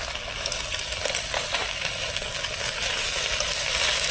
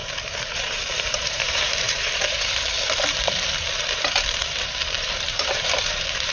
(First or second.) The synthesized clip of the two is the second